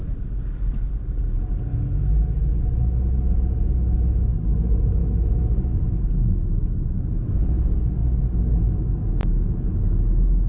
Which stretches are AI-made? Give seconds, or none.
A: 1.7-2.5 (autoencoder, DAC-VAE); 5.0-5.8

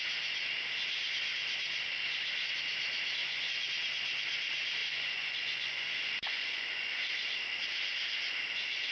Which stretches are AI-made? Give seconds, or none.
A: 3.2-3.7 (vocoder, Vocos); 4.8-7.0